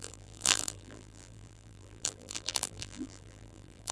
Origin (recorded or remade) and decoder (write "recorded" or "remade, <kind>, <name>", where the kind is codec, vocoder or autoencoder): remade, vocoder, BigVGAN v2